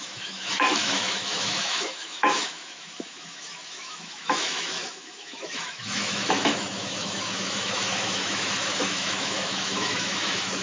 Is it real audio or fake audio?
fake